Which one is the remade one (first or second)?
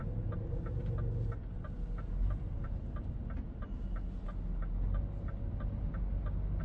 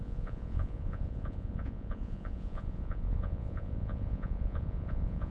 second